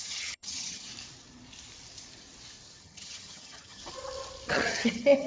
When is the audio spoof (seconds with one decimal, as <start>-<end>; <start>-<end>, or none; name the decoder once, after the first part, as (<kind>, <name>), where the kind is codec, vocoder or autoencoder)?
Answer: 0.0-0.9 (vocoder, HiFi-GAN); 2.8-3.8; 4.5-5.3